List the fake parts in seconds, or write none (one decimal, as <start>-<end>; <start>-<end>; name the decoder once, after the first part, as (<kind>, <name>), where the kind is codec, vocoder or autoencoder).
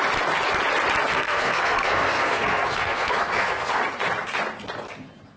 1.1-3.8 (codec, SNAC)